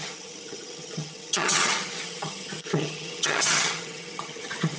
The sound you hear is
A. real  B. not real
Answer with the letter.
B